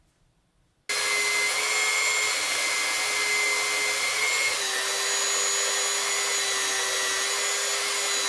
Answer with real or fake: real